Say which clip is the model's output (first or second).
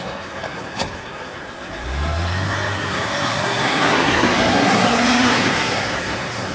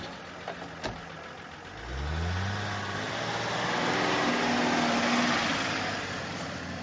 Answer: first